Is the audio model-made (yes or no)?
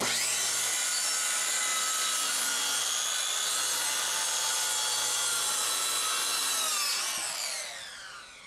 no